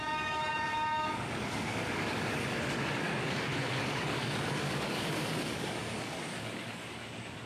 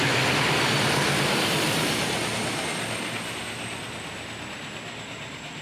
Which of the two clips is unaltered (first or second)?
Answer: second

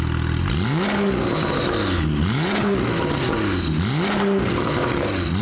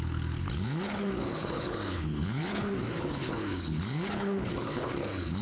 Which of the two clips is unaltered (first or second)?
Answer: first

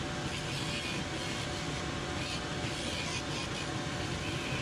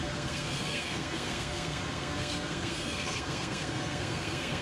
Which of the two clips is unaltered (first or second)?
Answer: first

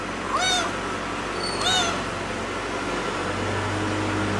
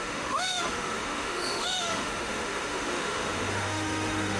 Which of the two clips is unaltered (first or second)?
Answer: first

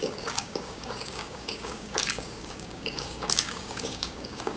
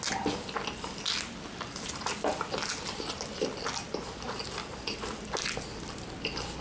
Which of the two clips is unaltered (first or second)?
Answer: second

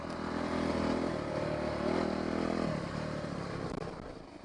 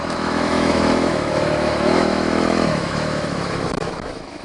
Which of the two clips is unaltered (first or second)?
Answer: first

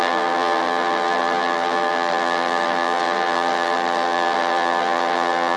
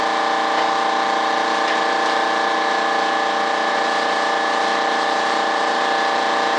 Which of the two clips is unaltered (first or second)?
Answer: second